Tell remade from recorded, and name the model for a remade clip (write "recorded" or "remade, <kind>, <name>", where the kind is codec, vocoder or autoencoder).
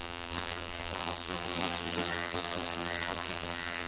remade, vocoder, BigVGAN v2